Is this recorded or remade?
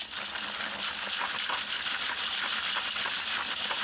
recorded